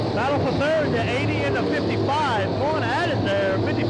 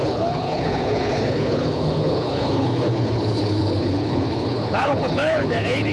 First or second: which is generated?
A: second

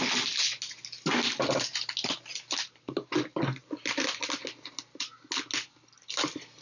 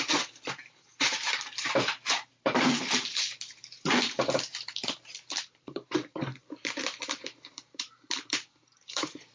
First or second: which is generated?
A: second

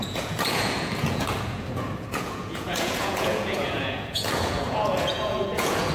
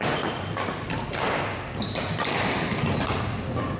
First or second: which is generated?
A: first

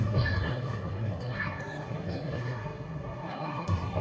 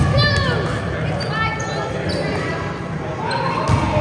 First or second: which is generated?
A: first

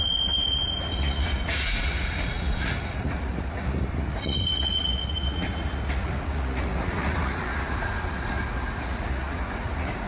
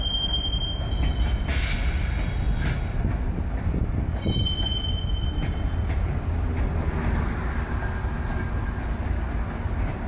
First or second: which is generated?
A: first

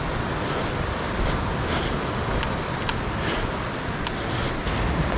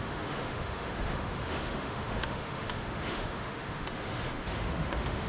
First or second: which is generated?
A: second